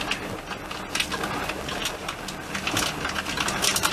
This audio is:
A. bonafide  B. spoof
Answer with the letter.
A